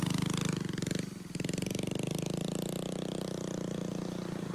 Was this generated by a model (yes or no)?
no